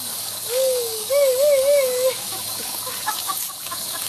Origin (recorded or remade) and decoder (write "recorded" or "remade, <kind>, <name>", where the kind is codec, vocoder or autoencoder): remade, codec, DAC